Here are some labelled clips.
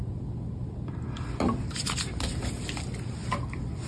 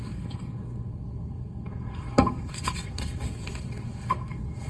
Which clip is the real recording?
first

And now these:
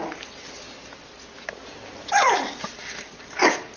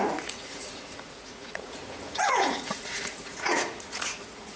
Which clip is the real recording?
first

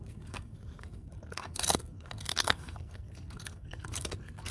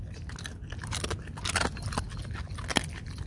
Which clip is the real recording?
second